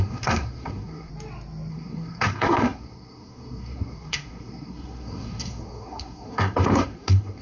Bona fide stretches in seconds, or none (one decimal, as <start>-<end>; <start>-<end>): 1.1-1.7